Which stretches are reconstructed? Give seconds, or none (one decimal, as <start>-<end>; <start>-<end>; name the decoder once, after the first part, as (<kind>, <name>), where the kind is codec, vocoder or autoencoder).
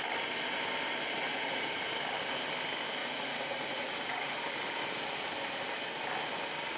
1.3-1.8 (vocoder, Vocos); 3.0-4.4